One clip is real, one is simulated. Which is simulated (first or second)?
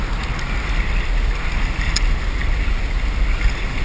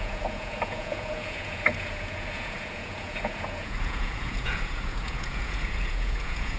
second